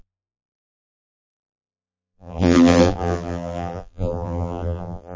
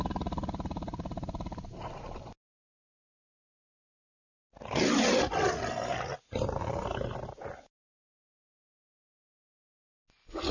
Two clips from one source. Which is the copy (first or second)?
first